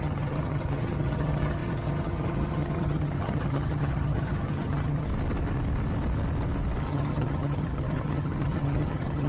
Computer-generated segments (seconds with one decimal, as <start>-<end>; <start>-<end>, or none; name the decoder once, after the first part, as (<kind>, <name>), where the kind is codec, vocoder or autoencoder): 0.0-5.1 (vocoder, HiFi-GAN); 6.8-9.3